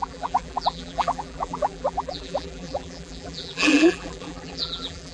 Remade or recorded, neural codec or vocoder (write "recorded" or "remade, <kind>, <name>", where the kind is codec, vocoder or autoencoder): remade, vocoder, BigVGAN v2